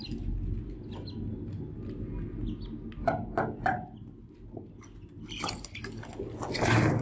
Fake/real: real